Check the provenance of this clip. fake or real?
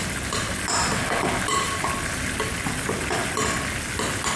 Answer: real